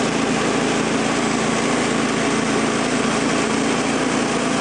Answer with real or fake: real